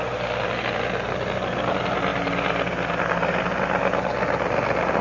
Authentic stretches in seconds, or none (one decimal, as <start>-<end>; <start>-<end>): 0.0-5.0